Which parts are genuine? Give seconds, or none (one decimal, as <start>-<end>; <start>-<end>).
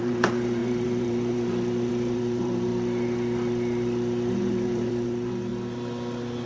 2.7-4.3; 5.5-6.5